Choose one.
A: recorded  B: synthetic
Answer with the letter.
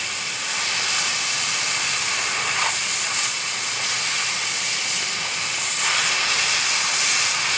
A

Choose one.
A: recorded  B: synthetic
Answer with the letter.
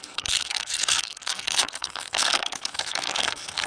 B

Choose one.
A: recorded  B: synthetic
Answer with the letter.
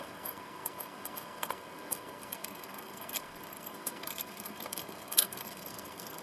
B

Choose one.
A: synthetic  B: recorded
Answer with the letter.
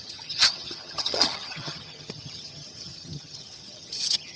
A